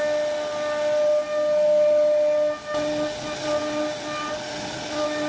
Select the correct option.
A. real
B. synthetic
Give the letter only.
A